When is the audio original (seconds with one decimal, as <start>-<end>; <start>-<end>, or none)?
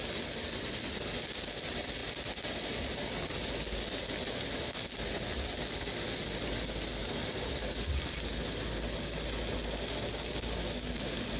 0.0-11.4